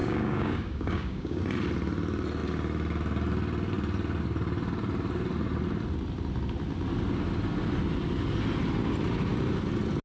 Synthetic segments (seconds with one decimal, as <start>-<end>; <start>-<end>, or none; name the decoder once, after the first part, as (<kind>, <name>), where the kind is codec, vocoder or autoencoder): 0.0-1.4 (codec, DAC)